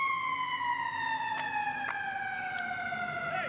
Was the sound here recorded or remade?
recorded